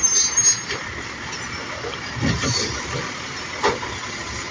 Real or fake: real